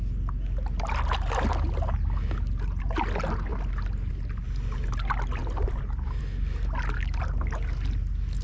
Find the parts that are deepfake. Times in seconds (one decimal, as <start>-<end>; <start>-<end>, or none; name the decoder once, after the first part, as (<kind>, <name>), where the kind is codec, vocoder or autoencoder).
none